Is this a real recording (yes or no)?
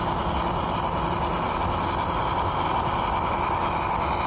yes